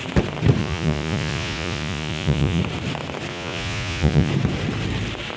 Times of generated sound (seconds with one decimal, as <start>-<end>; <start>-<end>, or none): 0.6-2.6; 3.3-4.3